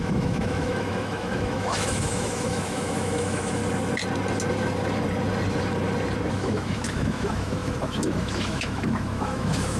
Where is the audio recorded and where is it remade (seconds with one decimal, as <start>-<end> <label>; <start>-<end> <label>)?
0.0-3.6 remade; 3.6-6.3 recorded; 6.3-9.8 remade